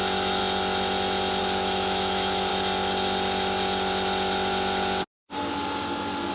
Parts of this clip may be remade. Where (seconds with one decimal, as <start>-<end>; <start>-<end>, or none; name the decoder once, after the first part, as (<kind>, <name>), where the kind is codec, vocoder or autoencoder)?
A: 0.0-0.4 (autoencoder, DAC-VAE); 1.4-2.5